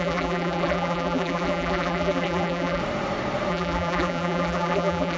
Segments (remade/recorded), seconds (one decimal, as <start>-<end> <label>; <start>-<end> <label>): 0.0-2.8 remade; 2.8-3.5 recorded; 3.5-5.2 remade